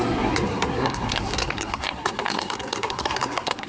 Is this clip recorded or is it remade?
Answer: remade